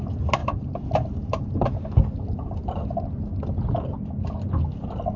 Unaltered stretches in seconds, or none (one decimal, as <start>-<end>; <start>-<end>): 0.0-0.4; 1.8-5.2